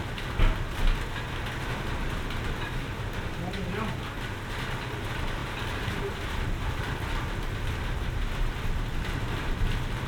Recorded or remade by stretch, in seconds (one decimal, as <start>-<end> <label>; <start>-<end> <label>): 0.0-5.4 recorded; 5.4-7.1 remade; 7.1-10.1 recorded